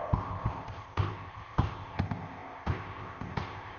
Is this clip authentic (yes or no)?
no